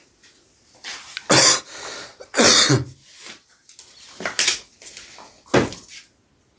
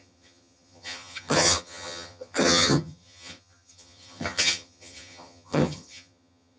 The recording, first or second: first